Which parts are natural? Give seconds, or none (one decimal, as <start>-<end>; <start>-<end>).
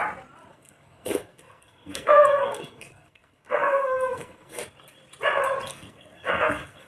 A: 0.0-0.5; 4.6-5.7